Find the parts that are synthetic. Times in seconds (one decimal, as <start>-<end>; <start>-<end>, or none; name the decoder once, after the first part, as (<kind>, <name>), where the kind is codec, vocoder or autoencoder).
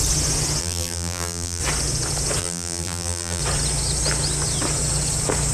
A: 0.6-1.6 (vocoder, BigVGAN v2); 2.4-3.4